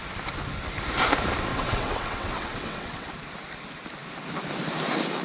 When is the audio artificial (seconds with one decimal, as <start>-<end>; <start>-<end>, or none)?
1.5-3.1

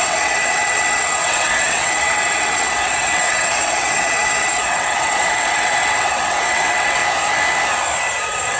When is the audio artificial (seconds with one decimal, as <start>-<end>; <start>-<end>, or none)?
0.0-7.0; 8.2-8.6